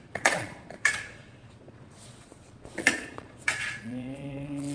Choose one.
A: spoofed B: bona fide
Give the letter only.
A